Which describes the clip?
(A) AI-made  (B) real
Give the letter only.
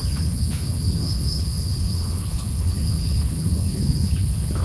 A